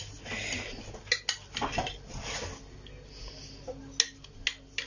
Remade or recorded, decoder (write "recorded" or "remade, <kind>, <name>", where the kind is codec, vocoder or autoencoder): recorded